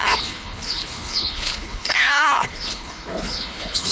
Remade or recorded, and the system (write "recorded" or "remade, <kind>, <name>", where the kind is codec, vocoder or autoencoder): remade, codec, HILCodec